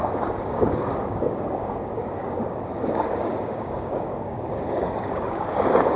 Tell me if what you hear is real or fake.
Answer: fake